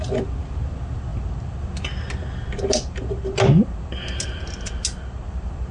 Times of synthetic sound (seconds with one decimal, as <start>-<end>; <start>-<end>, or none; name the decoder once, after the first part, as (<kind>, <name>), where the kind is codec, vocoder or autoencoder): none